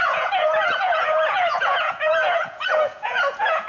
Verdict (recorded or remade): remade